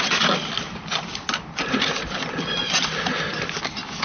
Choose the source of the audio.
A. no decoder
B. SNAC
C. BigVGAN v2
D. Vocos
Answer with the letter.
A